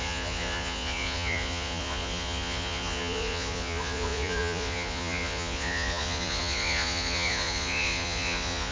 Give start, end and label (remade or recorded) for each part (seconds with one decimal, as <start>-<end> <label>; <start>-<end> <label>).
0.0-8.7 remade